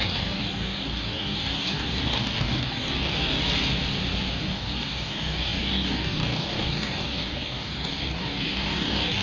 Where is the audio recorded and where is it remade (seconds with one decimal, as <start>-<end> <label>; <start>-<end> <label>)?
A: 0.0-3.4 remade; 3.4-4.3 recorded; 4.3-9.2 remade

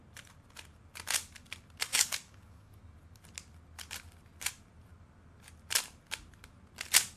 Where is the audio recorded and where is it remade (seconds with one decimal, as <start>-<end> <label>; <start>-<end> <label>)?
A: 0.0-1.9 recorded; 1.9-2.8 remade; 2.8-7.2 recorded

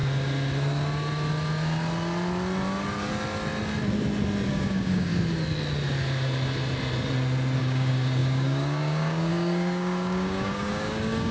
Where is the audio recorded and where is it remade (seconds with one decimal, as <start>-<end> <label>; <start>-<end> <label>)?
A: 0.0-4.5 recorded; 4.5-5.1 remade; 5.1-7.6 recorded; 7.6-11.3 remade

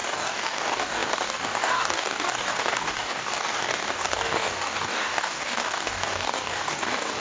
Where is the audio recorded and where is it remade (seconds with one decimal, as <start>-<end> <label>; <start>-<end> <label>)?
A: 0.0-7.2 remade